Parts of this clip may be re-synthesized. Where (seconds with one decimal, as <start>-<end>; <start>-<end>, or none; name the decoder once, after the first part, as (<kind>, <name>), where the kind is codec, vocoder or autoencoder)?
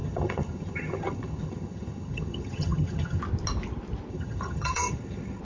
0.0-3.2 (vocoder, HiFi-GAN); 4.1-5.4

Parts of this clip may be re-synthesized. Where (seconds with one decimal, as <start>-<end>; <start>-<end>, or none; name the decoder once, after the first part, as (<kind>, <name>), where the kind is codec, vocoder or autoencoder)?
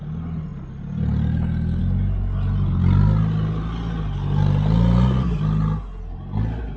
none